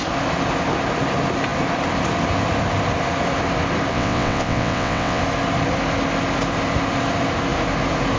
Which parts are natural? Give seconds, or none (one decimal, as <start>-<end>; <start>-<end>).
0.0-3.9; 5.2-8.2